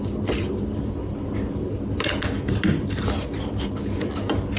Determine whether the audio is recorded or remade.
recorded